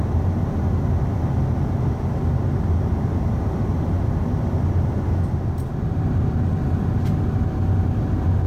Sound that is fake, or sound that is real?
real